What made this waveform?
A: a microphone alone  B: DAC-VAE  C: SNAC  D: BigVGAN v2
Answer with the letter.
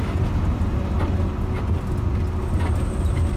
A